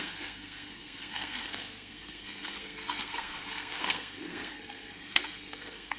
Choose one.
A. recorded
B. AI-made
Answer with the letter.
B